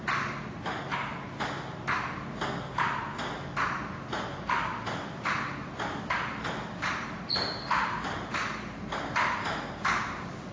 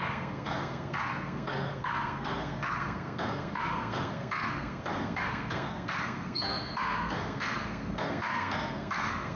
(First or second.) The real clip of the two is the first